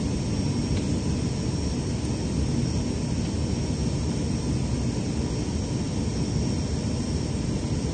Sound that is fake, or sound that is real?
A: real